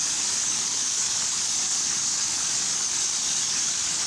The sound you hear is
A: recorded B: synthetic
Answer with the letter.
B